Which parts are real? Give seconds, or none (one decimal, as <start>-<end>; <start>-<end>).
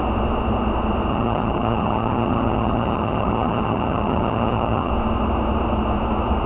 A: 0.0-1.1; 4.9-6.5